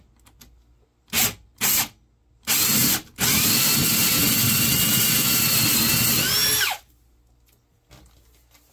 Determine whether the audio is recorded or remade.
recorded